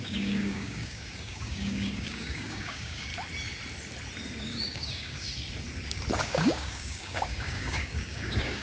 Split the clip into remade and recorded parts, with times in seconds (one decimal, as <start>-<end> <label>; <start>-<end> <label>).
0.0-3.1 remade; 3.1-4.4 recorded; 4.4-5.3 remade; 5.3-6.2 recorded; 6.2-8.6 remade